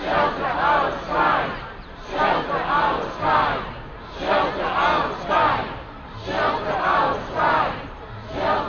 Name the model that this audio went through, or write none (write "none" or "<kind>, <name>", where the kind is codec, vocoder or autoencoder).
none